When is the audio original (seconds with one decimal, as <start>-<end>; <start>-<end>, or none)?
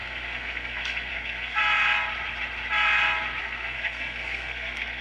1.6-3.4